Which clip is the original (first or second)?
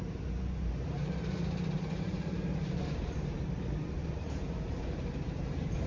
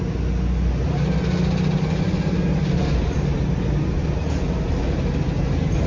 second